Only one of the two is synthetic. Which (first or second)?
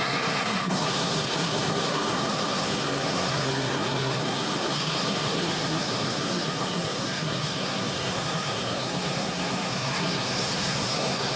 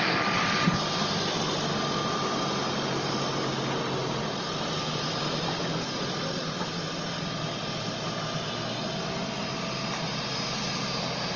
first